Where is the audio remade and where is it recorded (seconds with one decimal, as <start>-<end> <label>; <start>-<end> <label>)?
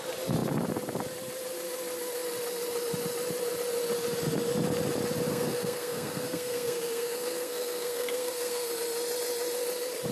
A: 0.0-5.3 recorded; 5.3-8.7 remade; 8.7-10.1 recorded